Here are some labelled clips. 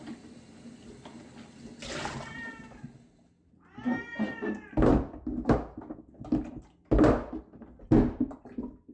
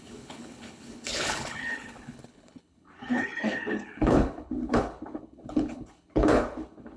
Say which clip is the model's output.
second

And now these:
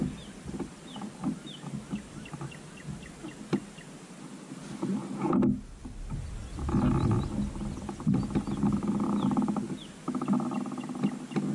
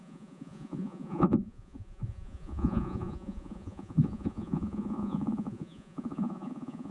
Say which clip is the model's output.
second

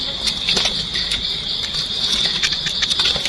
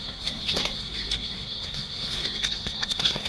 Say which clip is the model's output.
second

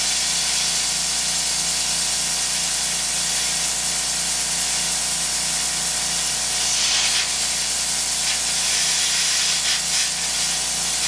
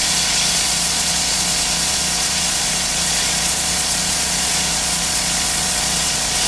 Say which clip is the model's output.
second